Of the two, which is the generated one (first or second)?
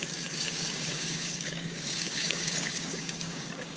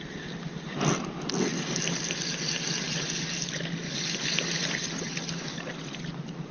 first